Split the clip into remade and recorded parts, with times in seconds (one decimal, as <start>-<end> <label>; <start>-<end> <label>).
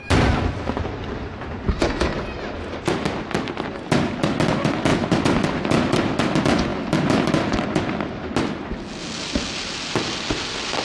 0.0-10.8 recorded